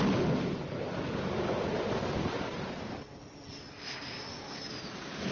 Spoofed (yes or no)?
no